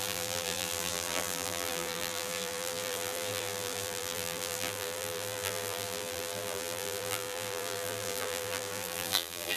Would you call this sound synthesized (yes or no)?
yes